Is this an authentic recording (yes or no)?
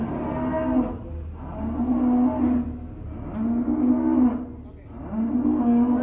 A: yes